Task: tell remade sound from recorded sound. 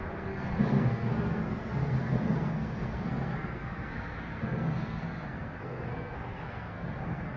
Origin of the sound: remade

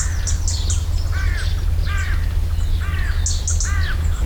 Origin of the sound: recorded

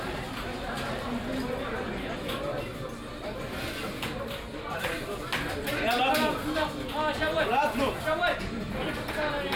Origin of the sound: recorded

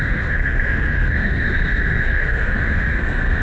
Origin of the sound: remade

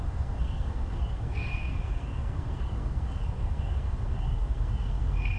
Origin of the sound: remade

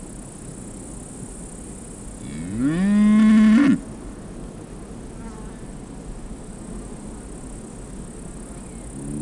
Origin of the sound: recorded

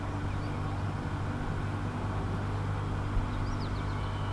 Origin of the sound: recorded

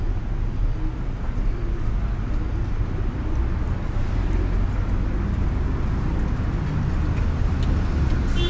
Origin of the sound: recorded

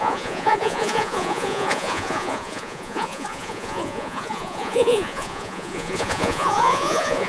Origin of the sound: remade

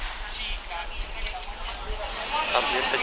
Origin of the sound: recorded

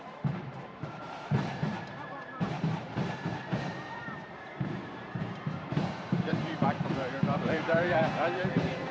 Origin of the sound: remade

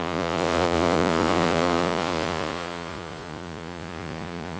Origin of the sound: remade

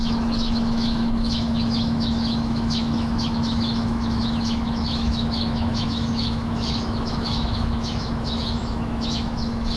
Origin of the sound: remade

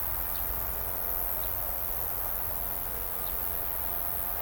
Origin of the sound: recorded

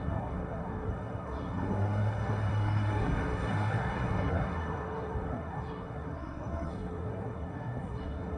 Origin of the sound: remade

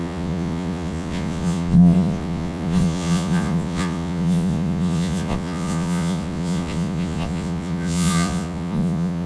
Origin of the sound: remade